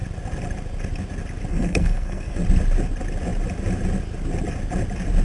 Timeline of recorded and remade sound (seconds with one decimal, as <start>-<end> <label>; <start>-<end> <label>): 0.0-1.5 recorded; 1.5-2.4 remade; 2.4-5.2 recorded